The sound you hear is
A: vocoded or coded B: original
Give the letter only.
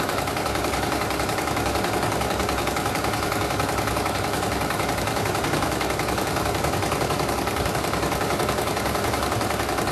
A